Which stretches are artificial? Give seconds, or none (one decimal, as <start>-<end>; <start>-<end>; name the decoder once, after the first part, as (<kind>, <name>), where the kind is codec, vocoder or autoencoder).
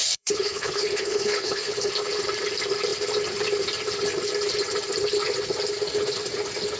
0.0-1.9 (codec, HILCodec)